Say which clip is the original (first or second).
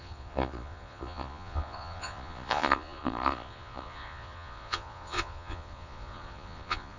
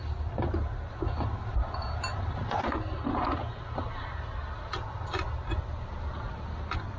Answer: second